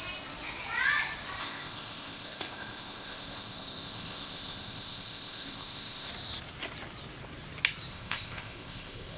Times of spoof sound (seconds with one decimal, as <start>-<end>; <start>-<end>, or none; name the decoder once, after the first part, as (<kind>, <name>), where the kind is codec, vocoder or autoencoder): 1.4-6.1 (codec, ZipCodec); 7.9-9.2